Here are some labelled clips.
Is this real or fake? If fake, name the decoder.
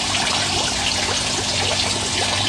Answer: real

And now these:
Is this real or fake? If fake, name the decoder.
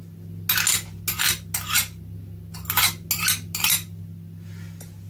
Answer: real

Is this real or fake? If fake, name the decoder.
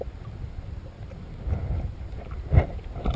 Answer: real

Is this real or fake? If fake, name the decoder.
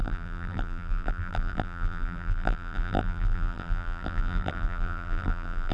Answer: fake, vocoder, BigVGAN v2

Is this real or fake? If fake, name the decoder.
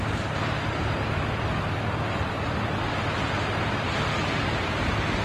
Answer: real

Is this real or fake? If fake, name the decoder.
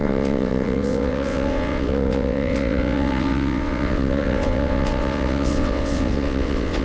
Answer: fake, vocoder, WaveNeXt